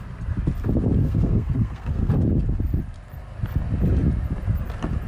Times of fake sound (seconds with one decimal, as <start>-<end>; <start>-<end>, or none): 1.0-2.1